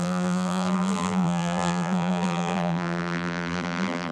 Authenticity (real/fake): fake